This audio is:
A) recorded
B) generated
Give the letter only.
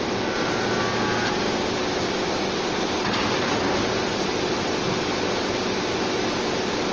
A